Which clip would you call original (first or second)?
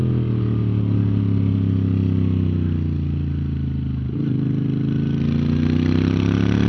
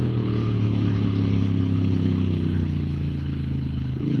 first